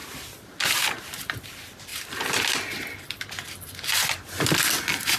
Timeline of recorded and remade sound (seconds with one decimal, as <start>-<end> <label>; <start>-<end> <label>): 0.0-5.2 recorded